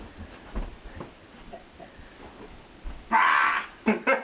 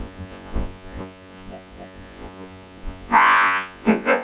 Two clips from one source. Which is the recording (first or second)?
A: first